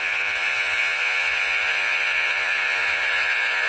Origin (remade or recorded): remade